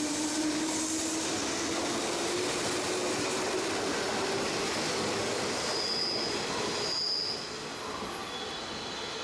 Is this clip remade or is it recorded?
recorded